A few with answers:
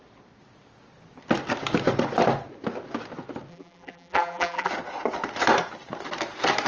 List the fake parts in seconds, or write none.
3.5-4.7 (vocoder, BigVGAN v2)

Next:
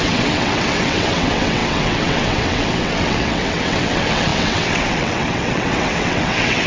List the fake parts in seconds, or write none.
0.0-6.7 (vocoder, WaveNeXt)

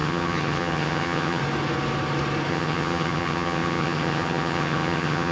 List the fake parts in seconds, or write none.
0.0-1.4 (vocoder, HiFi-GAN); 2.5-5.3

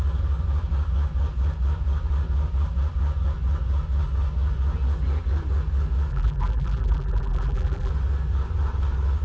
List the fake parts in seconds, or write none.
6.1-7.9 (vocoder, BigVGAN v2)

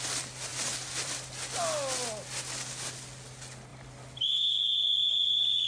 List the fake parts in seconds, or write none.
0.5-1.3 (vocoder, BigVGAN v2); 3.7-4.4

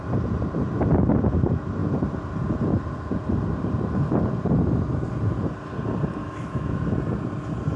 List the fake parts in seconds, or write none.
6.2-6.9 (autoencoder, DAC-VAE)